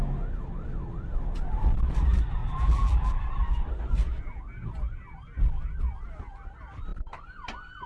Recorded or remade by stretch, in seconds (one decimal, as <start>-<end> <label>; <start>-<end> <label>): 0.0-2.4 recorded; 2.4-3.2 remade; 3.2-7.9 recorded